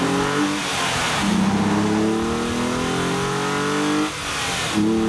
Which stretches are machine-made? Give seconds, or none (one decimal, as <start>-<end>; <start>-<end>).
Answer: none